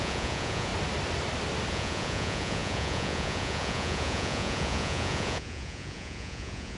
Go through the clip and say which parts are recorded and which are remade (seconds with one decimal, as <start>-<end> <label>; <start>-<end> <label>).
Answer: 0.0-0.7 remade; 0.7-1.7 recorded; 1.7-6.8 remade